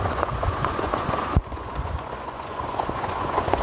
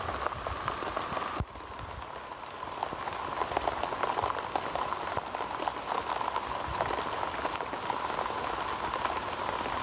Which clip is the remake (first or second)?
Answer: first